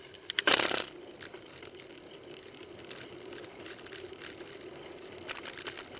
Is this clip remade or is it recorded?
remade